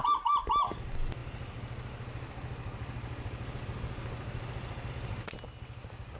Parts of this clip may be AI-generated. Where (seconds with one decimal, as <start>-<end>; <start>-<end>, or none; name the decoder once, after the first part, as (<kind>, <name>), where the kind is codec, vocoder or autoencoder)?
none

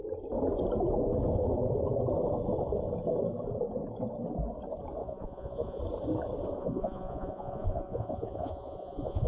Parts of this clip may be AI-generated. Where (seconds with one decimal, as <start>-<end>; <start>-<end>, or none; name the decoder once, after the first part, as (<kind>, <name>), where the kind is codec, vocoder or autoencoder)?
5.0-5.8 (vocoder, Vocos); 6.6-9.3

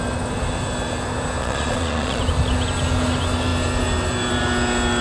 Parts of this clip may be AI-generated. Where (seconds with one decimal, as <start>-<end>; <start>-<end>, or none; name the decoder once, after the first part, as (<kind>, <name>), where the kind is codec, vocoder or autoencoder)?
1.4-2.2 (vocoder, Vocos)

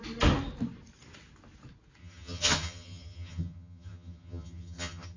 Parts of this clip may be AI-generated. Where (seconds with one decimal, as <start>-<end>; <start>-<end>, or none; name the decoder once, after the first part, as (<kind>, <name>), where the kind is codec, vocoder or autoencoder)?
2.0-5.2 (vocoder, HiFi-GAN)

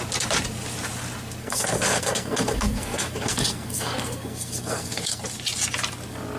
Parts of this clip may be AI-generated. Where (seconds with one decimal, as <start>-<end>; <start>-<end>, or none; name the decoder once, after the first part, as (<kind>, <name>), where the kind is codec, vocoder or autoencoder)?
1.4-5.2 (codec, SNAC)

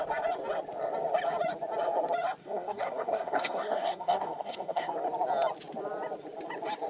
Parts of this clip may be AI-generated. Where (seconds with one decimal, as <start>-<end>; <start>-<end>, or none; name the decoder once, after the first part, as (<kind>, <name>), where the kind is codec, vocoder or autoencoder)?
2.4-4.9 (codec, SNAC)

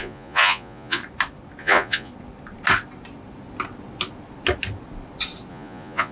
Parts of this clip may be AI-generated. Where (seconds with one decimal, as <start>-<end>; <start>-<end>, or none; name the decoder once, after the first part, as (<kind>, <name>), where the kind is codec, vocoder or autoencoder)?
0.0-1.0 (vocoder, Vocos); 1.6-2.1; 5.5-6.1

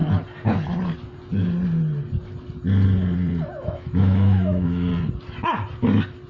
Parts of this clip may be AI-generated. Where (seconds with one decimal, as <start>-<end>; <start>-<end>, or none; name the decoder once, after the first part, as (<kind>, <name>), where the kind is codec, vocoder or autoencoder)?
3.6-4.9 (autoencoder, DAC-VAE)